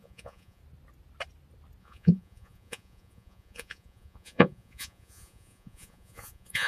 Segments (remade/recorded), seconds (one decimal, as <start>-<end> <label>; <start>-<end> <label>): 0.0-0.6 remade; 0.6-1.8 recorded; 1.8-6.7 remade